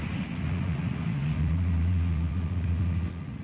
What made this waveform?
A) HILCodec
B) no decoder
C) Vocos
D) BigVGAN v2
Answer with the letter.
C